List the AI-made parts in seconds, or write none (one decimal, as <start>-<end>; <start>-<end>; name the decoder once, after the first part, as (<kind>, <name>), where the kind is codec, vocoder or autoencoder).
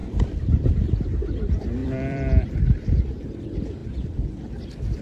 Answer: 0.0-0.7 (vocoder, BigVGAN v2); 1.8-2.5; 3.8-4.3